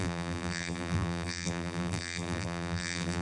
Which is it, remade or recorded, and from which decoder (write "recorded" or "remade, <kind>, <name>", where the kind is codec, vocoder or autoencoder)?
remade, vocoder, BigVGAN v2